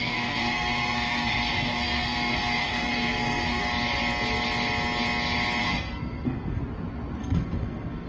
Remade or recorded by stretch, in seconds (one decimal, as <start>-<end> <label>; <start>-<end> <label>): 0.0-3.7 remade; 3.7-5.6 recorded; 5.6-6.6 remade; 6.6-7.2 recorded; 7.2-8.1 remade